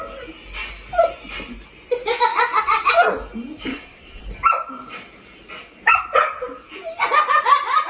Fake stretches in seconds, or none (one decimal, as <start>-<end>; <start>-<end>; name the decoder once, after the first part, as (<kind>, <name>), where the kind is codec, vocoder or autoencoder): 2.3-2.9 (vocoder, WaveNeXt); 3.7-4.2